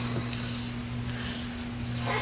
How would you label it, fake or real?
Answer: real